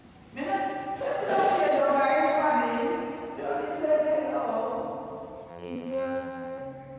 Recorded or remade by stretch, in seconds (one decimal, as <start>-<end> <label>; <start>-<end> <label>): 0.0-5.5 recorded; 5.5-6.6 remade; 6.6-7.0 recorded